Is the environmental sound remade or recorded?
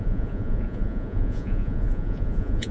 remade